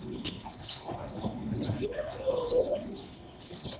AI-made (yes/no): yes